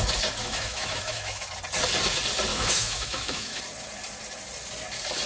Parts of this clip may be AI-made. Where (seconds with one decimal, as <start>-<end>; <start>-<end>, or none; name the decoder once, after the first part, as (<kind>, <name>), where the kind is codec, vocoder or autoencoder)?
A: 0.4-1.5 (autoencoder, DAC-VAE); 2.5-3.6